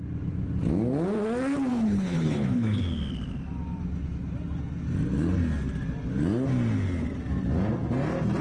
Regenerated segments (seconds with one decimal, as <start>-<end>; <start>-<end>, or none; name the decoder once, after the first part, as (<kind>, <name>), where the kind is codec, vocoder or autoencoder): 1.7-2.8 (codec, HILCodec)